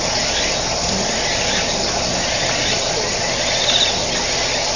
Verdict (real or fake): real